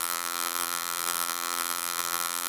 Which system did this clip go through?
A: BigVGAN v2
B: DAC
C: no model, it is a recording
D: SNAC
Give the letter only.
A